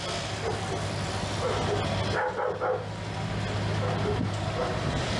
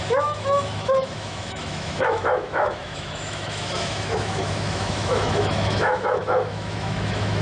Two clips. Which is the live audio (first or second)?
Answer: first